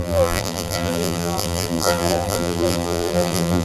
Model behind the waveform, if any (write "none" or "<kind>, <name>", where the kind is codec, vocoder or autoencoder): vocoder, BigVGAN v2